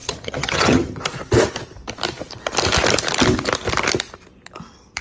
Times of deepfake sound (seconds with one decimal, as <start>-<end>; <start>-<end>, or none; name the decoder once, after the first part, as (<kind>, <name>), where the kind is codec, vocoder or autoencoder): 0.0-1.0 (vocoder, HiFi-GAN)